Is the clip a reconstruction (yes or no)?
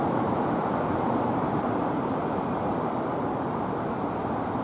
yes